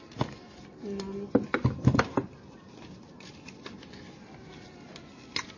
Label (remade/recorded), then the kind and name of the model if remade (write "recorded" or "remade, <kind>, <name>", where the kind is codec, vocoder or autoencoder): recorded